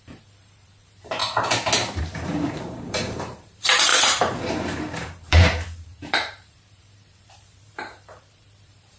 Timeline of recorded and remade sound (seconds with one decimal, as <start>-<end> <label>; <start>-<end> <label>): 0.0-1.2 remade; 1.2-2.0 recorded; 2.0-9.0 remade